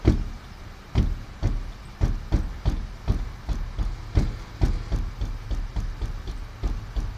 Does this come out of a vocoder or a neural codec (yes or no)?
no